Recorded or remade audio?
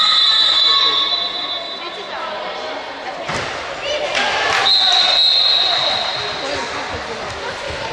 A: recorded